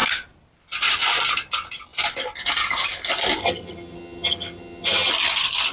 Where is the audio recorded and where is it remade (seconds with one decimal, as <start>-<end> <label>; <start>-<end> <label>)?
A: 0.0-3.4 recorded; 3.4-5.1 remade; 5.1-5.7 recorded